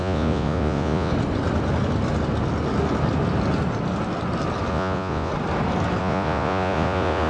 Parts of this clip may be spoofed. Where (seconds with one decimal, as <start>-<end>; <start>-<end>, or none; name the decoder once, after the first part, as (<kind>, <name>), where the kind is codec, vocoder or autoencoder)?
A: 0.0-1.1 (vocoder, Vocos); 4.7-5.3; 6.0-7.3

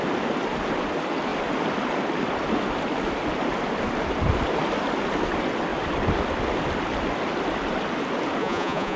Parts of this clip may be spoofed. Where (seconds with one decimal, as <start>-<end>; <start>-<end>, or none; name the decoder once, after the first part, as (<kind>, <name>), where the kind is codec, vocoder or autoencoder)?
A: 8.4-9.0 (vocoder, Vocos)